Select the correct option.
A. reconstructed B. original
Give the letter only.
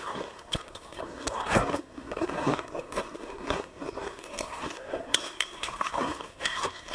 A